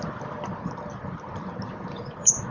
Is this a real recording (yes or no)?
yes